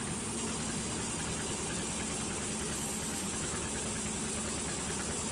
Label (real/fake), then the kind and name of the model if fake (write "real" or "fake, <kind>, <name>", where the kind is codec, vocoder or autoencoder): real